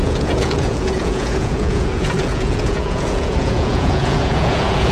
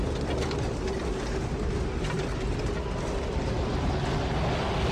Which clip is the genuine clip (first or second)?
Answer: second